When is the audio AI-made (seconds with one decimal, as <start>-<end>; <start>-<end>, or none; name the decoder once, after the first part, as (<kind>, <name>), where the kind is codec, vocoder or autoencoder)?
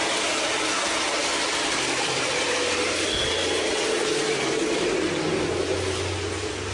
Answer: 1.2-3.0 (vocoder, BigVGAN v2)